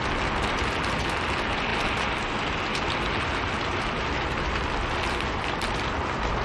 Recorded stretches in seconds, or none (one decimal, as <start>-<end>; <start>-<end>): 0.0-6.4